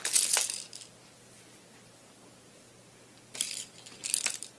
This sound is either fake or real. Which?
real